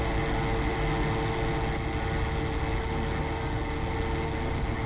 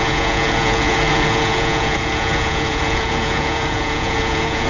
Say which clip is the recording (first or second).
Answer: first